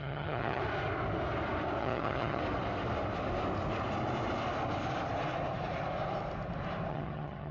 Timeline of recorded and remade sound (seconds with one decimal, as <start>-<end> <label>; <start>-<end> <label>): 0.0-0.6 remade; 0.6-1.8 recorded; 1.8-2.4 remade; 2.4-6.9 recorded; 6.9-7.5 remade